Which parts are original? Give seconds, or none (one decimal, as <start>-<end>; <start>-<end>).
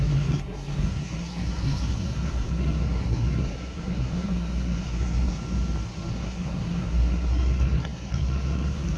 5.4-6.1